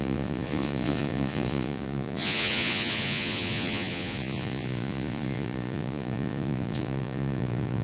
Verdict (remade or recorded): remade